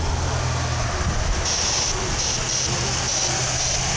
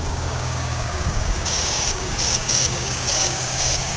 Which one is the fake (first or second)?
second